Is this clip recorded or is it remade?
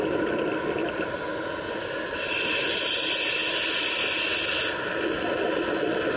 recorded